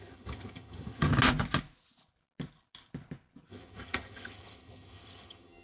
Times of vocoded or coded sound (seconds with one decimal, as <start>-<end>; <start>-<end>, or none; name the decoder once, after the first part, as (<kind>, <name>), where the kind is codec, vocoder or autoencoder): 0.0-1.1 (vocoder, HiFi-GAN); 3.5-5.6